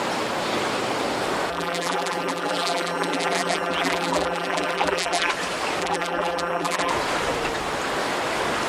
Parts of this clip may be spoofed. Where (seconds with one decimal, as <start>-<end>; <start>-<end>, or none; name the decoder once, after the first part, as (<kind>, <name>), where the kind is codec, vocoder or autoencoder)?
1.5-5.3 (vocoder, BigVGAN v2); 5.8-6.9